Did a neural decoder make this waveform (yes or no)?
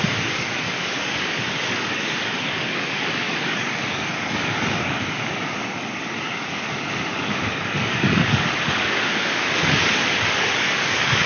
yes